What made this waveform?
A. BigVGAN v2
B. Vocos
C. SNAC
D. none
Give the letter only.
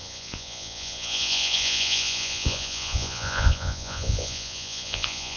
B